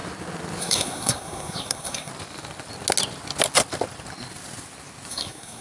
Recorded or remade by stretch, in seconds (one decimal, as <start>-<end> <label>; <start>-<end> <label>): 0.0-0.6 recorded; 0.6-2.1 remade; 2.1-5.1 recorded; 5.1-5.6 remade